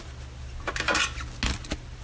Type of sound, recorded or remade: recorded